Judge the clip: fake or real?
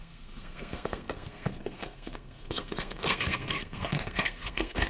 fake